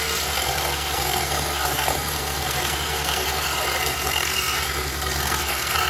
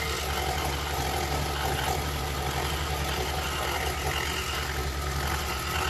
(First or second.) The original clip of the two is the second